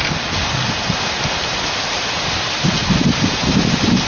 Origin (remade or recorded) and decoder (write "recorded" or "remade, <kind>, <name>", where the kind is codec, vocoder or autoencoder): recorded